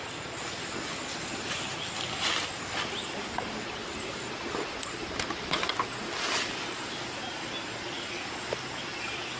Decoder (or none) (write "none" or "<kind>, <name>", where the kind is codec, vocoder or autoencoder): none